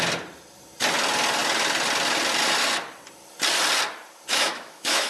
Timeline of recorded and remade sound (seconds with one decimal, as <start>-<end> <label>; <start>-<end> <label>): 0.0-4.3 recorded; 4.3-5.1 remade